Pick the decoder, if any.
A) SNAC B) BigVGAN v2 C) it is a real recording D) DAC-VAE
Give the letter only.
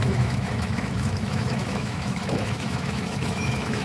D